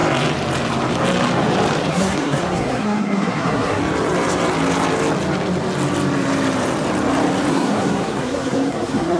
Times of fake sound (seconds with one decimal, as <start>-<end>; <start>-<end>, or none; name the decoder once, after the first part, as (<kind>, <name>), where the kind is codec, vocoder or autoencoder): 1.9-3.8 (codec, SNAC); 7.5-9.2

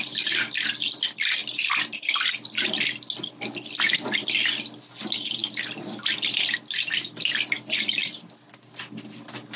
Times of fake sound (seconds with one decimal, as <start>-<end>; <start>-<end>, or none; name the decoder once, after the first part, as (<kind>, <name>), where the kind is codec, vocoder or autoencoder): none